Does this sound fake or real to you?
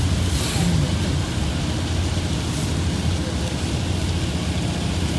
real